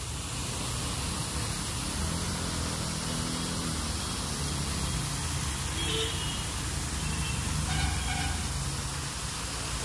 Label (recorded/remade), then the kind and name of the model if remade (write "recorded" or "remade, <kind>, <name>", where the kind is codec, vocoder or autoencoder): recorded